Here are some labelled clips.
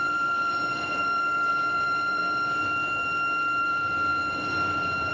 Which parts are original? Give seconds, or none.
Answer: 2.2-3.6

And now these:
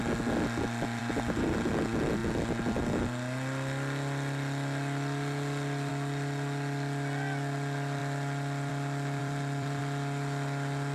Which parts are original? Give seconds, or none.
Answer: 0.0-1.0; 1.7-9.2; 9.8-10.9

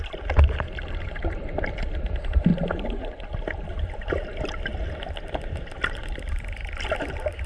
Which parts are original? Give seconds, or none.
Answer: none

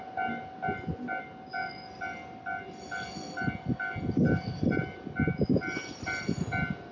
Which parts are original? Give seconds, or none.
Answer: 0.0-6.9

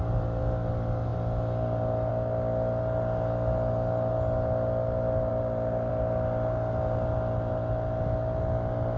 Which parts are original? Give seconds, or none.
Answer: 0.0-9.0

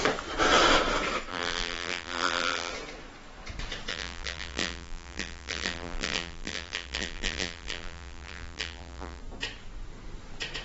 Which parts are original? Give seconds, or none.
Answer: 0.0-1.3; 2.7-3.9; 9.2-10.6